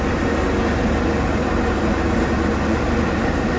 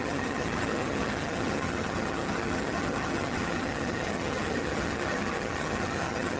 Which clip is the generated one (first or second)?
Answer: second